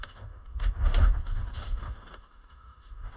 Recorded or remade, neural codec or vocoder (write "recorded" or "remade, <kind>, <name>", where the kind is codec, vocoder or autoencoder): remade, autoencoder, DAC-VAE